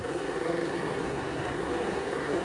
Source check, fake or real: fake